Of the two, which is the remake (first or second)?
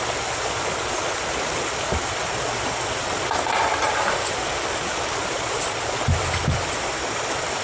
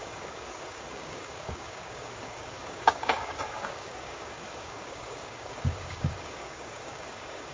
second